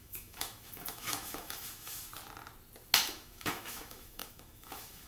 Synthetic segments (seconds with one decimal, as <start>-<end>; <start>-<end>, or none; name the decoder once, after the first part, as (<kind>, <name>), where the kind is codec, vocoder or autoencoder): 0.0-2.1 (autoencoder, DAC-VAE); 3.0-5.1